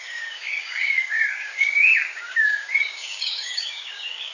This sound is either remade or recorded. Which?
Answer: remade